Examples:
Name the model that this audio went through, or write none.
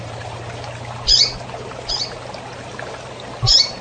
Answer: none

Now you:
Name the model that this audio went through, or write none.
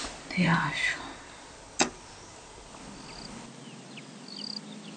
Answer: none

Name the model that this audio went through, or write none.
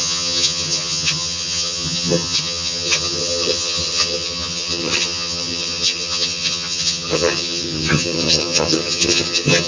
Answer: vocoder, HiFi-GAN